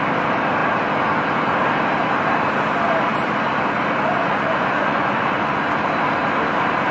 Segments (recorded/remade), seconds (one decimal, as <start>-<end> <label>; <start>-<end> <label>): 0.0-4.2 recorded; 4.2-5.7 remade; 5.7-6.9 recorded